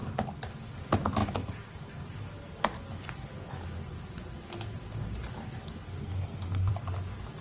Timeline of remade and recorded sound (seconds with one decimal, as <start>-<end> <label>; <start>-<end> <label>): 0.0-6.0 recorded; 6.0-6.7 remade; 6.7-7.4 recorded